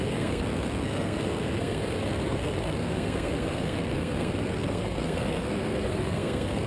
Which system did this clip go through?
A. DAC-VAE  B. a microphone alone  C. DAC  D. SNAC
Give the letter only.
D